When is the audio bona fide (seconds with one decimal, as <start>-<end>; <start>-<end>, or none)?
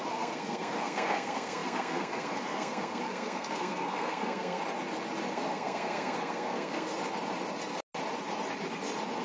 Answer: 4.6-5.3; 6.9-9.2